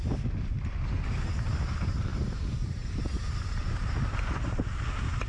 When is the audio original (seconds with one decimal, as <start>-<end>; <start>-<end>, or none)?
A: 0.0-5.3

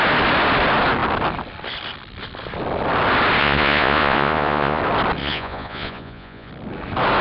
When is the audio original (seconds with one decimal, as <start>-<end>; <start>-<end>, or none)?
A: 0.0-3.4; 4.8-5.2; 6.5-7.2